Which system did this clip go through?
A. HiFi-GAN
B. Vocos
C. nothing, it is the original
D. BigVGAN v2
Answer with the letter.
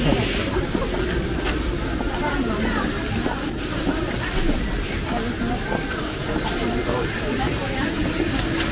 C